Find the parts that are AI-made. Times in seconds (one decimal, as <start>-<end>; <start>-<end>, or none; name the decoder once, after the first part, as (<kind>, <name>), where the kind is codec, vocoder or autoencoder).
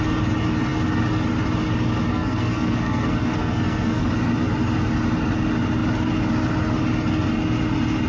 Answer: 2.1-4.0 (codec, SNAC)